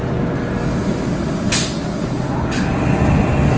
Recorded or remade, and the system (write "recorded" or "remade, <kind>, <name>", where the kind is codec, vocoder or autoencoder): recorded